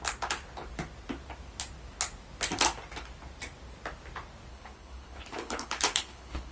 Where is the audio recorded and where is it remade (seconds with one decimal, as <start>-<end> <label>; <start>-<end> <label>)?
0.0-4.5 recorded; 4.5-6.5 remade